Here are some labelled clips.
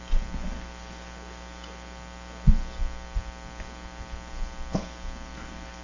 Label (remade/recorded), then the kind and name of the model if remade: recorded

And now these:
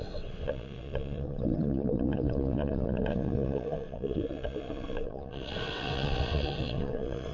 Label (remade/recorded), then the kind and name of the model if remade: remade, vocoder, WaveNeXt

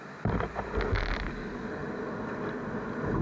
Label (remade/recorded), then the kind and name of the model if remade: recorded